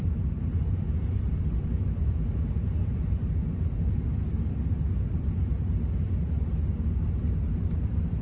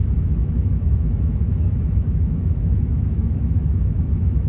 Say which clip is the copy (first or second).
second